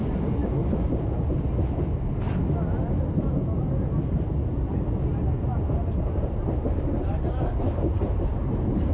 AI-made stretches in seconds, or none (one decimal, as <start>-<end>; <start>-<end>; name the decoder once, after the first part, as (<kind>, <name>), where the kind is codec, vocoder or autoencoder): none